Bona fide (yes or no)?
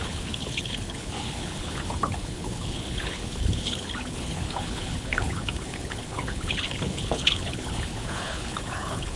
no